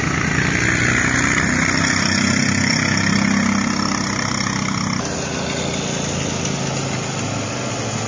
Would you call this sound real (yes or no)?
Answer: yes